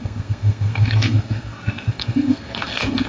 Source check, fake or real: fake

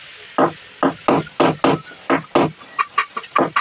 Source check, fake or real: real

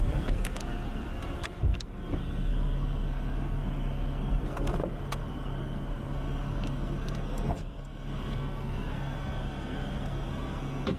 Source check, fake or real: fake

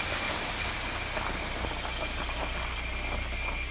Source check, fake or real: real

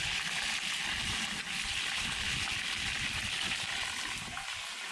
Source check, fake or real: real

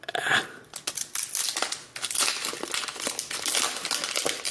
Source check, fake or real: real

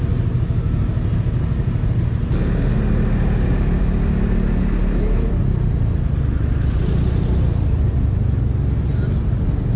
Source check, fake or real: real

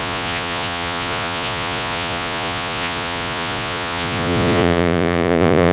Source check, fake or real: fake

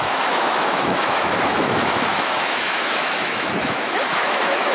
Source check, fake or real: fake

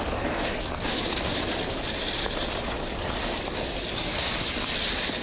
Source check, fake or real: real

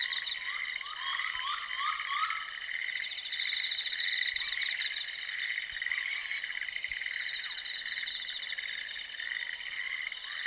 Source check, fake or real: real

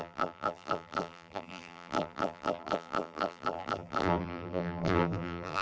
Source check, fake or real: fake